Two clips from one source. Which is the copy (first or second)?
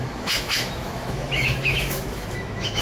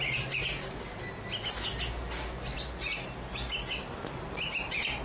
first